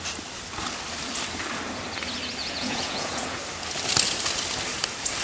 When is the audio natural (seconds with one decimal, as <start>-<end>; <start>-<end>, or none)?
0.0-2.4; 3.4-5.2